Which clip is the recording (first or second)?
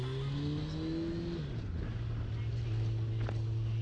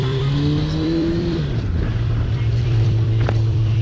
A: first